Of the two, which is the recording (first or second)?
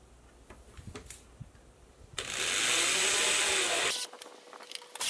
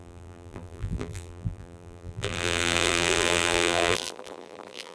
first